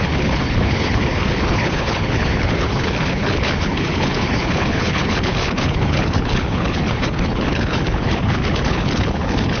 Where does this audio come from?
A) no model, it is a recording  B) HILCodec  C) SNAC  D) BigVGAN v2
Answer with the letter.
B